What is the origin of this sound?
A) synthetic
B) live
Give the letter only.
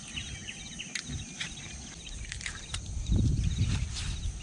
B